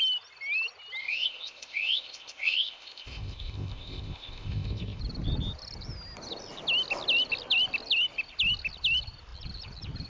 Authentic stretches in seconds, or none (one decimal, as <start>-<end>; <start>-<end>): 0.0-1.0; 5.0-10.1